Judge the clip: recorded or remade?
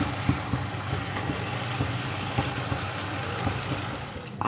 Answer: recorded